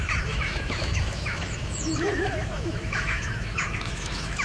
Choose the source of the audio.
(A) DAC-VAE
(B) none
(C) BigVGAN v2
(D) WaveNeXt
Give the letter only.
A